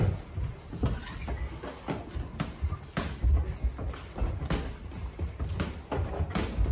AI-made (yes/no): no